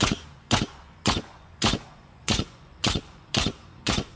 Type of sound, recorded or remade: remade